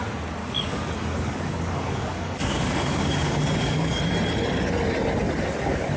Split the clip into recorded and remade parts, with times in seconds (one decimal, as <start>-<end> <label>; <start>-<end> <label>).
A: 0.0-0.4 recorded; 0.4-4.0 remade; 4.0-6.0 recorded